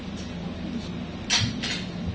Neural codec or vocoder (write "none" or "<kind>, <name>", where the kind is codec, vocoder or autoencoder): none